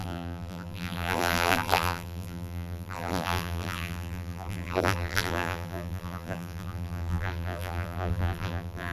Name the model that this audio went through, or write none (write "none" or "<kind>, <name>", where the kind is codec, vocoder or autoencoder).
vocoder, BigVGAN v2